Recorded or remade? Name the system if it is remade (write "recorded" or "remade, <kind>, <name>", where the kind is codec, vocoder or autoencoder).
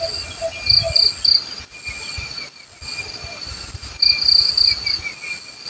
recorded